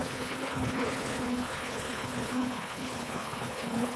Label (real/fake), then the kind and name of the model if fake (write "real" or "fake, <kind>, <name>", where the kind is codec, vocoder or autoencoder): fake, codec, HILCodec